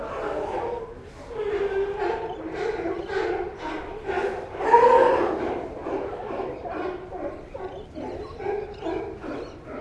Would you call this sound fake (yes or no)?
no